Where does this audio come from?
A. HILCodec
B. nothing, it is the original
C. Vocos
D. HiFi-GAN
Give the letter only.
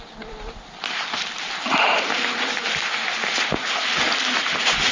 B